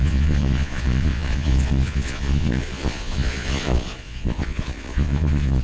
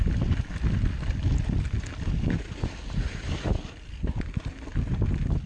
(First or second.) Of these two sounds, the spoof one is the first